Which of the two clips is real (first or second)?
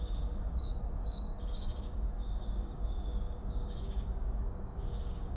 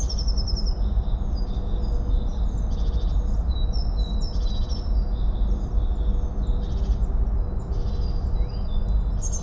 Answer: second